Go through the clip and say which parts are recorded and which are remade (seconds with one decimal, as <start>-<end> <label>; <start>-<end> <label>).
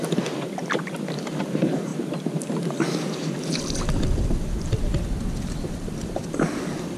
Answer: 0.0-1.9 remade; 1.9-4.3 recorded; 4.3-7.0 remade